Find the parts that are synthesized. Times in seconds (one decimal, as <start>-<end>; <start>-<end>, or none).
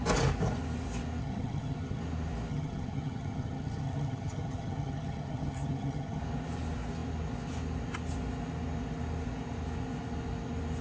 1.2-2.0; 2.5-6.2